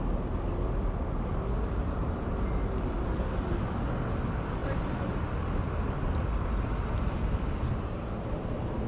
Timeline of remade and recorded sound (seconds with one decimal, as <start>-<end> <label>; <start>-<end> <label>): 0.0-4.6 recorded; 4.6-5.3 remade; 5.3-8.9 recorded